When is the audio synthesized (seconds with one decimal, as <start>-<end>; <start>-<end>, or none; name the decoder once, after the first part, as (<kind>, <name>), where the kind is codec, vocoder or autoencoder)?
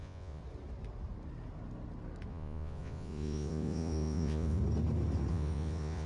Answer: 0.0-0.4 (vocoder, Vocos); 2.3-4.6; 5.3-6.1